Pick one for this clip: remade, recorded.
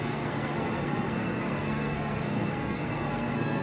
remade